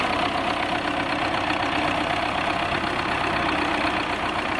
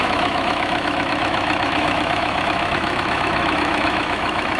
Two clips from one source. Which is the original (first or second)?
first